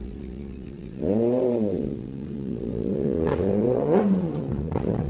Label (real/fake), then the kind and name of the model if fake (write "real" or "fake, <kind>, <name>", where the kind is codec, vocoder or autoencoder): fake, vocoder, WaveNeXt